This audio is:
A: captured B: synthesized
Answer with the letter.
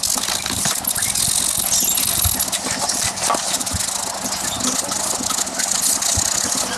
A